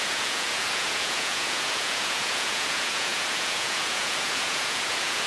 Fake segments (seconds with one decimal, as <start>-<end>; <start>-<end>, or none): 0.0-5.3